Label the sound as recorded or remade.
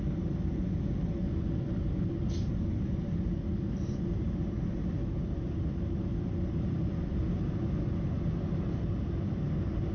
recorded